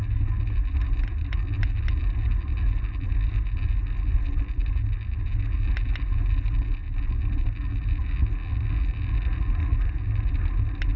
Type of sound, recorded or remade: recorded